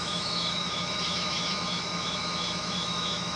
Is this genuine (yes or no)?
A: no